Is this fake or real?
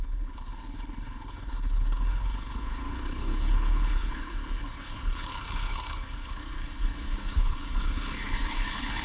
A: fake